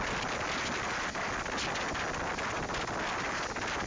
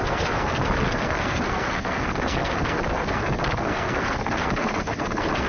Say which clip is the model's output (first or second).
second